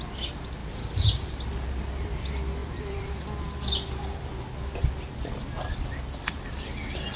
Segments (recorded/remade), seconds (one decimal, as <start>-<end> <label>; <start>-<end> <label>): 0.0-0.6 recorded; 0.6-1.4 remade; 1.4-2.6 recorded; 2.6-3.2 remade; 3.2-7.2 recorded